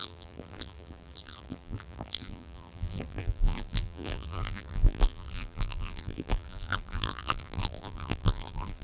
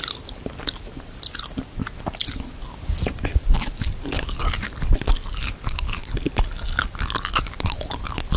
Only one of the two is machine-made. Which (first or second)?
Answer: first